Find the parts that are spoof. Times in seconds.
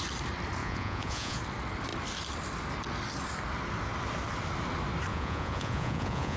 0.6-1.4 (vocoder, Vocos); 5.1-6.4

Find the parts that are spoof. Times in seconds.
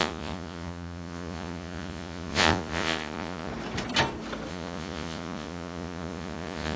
0.0-3.5 (vocoder, Vocos); 4.5-6.8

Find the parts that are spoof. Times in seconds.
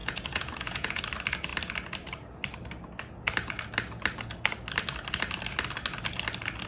0.0-1.0 (vocoder, Vocos)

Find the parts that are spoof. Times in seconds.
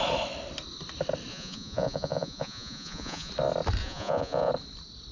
1.3-3.3 (vocoder, Vocos); 3.8-4.5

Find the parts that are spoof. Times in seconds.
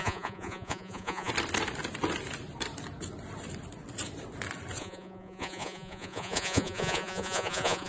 0.0-1.3 (vocoder, Vocos); 4.8-7.9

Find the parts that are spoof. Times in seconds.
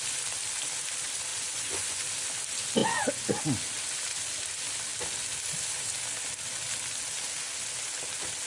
1.3-2.0 (vocoder, Vocos); 2.8-3.4